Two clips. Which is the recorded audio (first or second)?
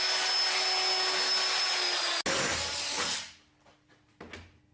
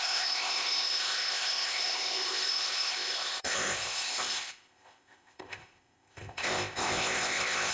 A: first